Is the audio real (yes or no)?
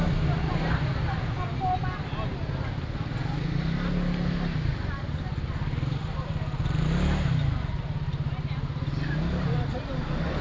yes